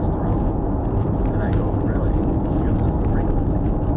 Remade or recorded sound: recorded